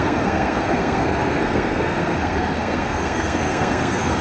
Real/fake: fake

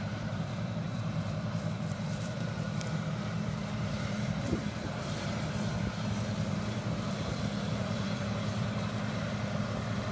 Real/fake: fake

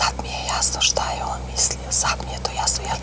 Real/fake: real